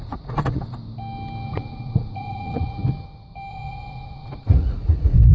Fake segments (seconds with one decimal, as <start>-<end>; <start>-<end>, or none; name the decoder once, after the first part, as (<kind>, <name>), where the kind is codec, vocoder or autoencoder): 0.0-0.8 (vocoder, Vocos); 1.5-2.8; 3.5-5.3